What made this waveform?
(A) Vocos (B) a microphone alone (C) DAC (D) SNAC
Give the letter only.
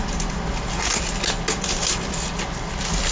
B